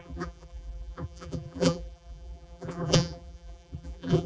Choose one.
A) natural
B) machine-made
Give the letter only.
B